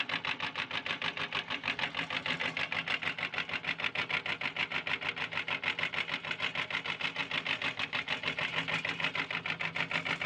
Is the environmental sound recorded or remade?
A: recorded